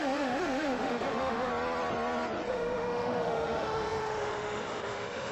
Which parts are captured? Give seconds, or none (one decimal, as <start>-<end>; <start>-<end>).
1.5-2.5